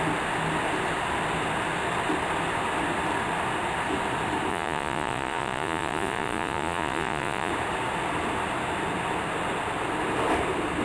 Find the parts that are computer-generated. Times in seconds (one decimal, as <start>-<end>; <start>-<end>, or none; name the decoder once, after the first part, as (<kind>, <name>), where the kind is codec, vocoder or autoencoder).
4.5-7.5 (vocoder, Vocos)